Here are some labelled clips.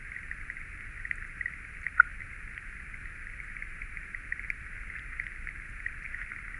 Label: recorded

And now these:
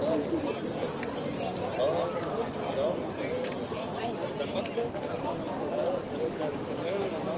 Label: recorded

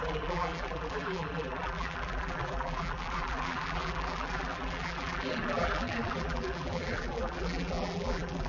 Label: remade